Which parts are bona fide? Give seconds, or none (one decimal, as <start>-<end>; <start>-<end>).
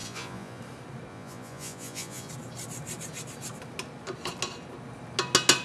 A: 0.6-1.1; 2.3-5.6